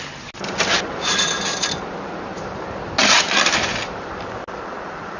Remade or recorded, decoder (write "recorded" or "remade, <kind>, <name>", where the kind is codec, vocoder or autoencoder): recorded